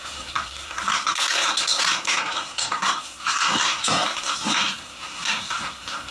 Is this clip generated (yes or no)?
yes